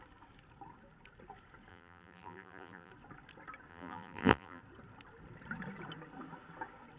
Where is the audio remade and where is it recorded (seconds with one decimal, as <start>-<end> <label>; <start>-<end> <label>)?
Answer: 0.0-1.7 recorded; 1.7-2.9 remade; 2.9-3.7 recorded; 3.7-4.6 remade; 4.6-7.0 recorded